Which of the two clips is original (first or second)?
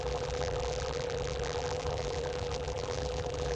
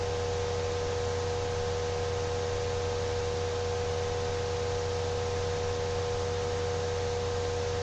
second